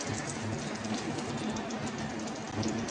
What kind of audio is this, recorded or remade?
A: recorded